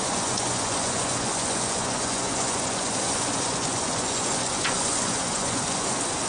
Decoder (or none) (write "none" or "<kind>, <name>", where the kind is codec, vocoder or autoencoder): vocoder, Vocos